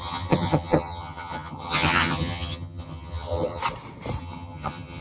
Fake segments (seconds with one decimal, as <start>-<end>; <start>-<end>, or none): 0.0-3.6; 4.2-5.0